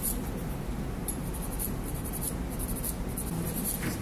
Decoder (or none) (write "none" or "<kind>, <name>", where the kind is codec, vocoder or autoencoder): none